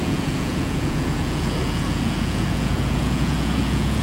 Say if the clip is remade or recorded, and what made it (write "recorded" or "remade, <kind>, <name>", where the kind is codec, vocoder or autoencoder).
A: remade, vocoder, Vocos